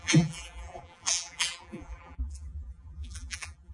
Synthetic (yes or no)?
yes